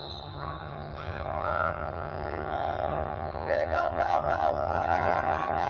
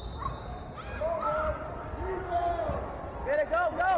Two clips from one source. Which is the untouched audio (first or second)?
second